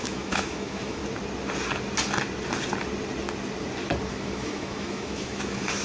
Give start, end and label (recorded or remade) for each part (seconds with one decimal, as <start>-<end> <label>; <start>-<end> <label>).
0.0-1.0 remade; 1.0-4.1 recorded; 4.1-5.8 remade